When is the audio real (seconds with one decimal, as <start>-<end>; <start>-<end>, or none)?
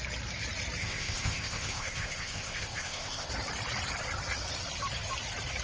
0.0-0.8; 3.3-5.6